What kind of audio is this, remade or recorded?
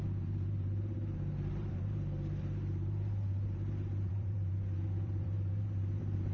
remade